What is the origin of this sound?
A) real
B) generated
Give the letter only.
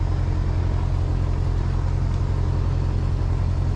A